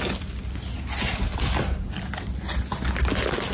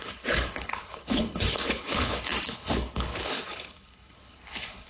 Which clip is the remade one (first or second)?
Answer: second